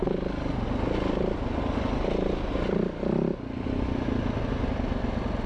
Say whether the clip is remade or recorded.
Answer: recorded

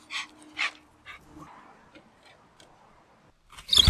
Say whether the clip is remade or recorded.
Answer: recorded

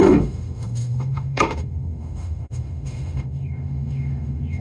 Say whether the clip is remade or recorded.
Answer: remade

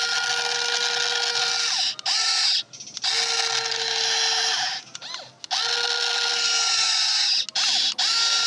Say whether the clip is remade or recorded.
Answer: recorded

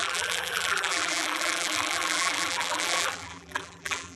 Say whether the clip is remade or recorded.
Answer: remade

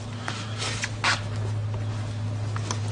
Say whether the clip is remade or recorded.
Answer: recorded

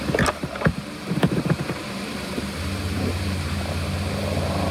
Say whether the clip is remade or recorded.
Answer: remade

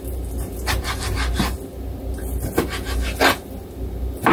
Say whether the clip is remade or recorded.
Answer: recorded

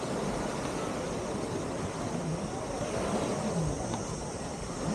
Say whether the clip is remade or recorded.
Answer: recorded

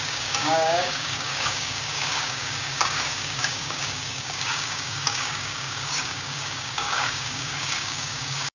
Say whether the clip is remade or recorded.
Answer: remade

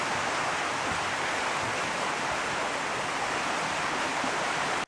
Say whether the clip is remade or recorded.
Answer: recorded